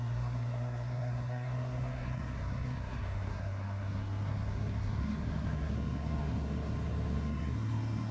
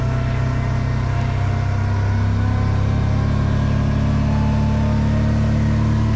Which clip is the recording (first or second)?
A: second